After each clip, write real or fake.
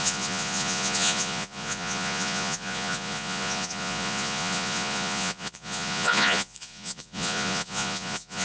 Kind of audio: fake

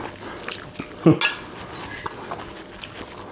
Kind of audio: real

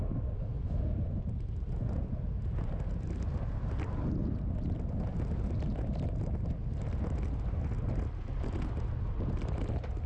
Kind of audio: real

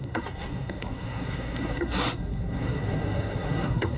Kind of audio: fake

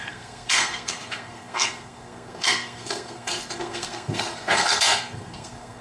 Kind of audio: fake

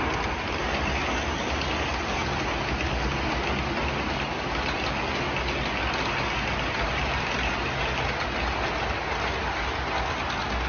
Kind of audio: real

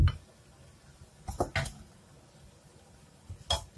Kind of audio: real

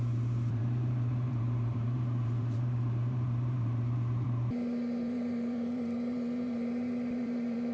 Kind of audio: fake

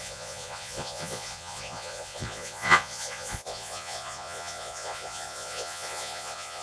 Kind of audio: fake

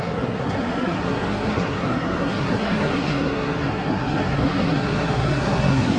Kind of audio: fake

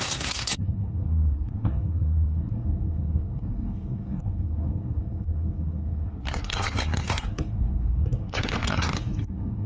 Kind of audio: fake